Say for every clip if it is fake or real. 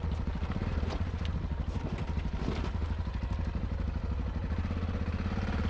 real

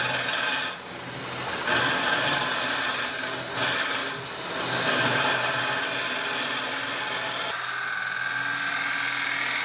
real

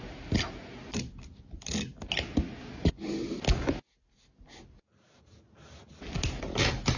real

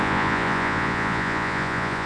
fake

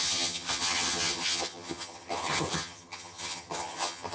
fake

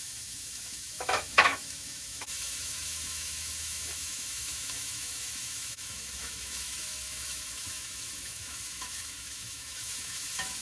fake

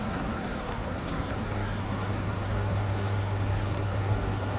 fake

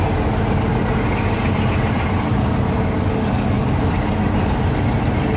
real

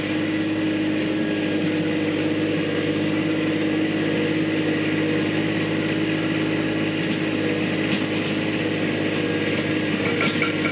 real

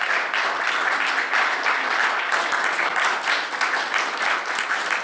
real